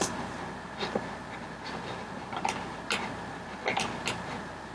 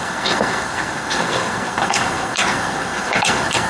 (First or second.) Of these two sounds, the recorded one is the first